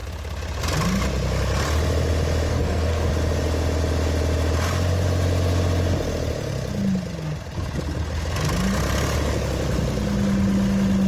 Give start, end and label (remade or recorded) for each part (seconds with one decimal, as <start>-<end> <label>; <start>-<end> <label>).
0.0-2.5 recorded; 2.5-3.1 remade; 3.1-11.1 recorded